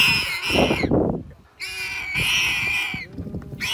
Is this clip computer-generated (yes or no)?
no